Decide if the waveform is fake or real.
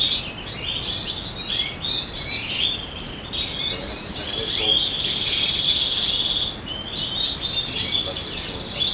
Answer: real